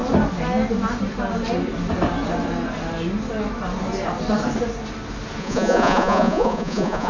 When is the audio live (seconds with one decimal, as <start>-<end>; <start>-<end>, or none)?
0.0-5.4